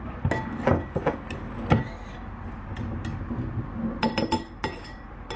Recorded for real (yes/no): yes